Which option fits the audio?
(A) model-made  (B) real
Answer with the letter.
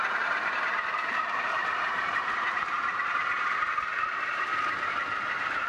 A